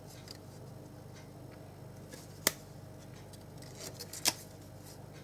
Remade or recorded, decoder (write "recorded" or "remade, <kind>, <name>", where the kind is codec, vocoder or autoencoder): recorded